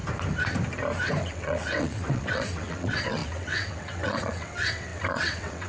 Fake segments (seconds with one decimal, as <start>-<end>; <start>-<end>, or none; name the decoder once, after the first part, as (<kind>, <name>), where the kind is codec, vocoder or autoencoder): 1.2-5.7 (vocoder, WaveNeXt)